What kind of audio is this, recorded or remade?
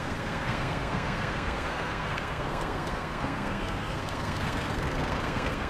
remade